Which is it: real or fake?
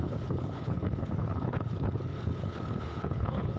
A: fake